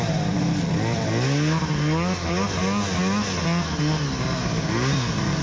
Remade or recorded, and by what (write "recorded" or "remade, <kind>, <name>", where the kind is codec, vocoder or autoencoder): recorded